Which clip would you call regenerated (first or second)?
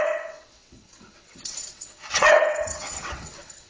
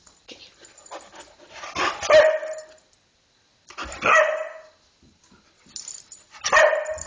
first